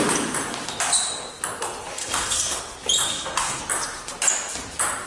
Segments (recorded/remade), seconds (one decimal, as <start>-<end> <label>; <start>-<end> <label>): 0.0-2.0 recorded; 2.0-2.6 remade; 2.6-3.0 recorded; 3.0-3.6 remade; 3.6-5.1 recorded

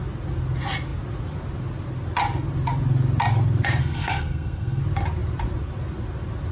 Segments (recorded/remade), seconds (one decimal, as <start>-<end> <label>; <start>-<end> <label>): 0.0-3.8 recorded; 3.8-4.8 remade; 4.8-6.5 recorded

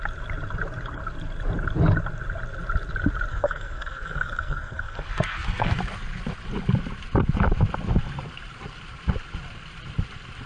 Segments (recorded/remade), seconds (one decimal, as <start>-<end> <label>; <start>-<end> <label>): 0.0-3.3 recorded; 3.3-5.8 remade; 5.8-10.5 recorded

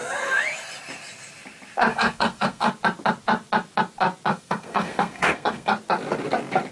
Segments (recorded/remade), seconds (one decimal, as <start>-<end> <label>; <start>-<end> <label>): 0.0-1.9 recorded; 1.9-2.7 remade; 2.7-4.3 recorded; 4.3-5.7 remade; 5.7-6.7 recorded

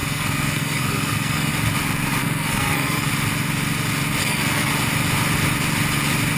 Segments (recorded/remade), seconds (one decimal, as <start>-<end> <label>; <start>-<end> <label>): 0.0-1.5 remade; 1.5-2.2 recorded; 2.2-3.1 remade; 3.1-4.2 recorded; 4.2-4.7 remade; 4.7-6.4 recorded